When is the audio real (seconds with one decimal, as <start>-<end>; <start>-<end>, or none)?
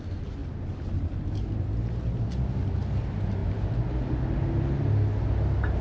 0.0-5.8